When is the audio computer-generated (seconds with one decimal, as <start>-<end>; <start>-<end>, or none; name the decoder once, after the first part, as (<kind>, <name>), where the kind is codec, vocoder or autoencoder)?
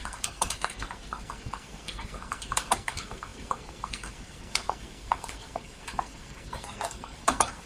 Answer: 0.0-7.7 (codec, SNAC)